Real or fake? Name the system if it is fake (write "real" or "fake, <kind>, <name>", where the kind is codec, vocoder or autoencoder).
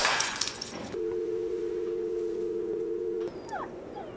fake, vocoder, Vocos